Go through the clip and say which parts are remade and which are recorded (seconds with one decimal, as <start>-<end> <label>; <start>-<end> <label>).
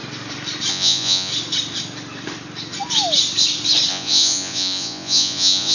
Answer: 0.0-0.7 recorded; 0.7-1.3 remade; 1.3-3.9 recorded; 3.9-5.7 remade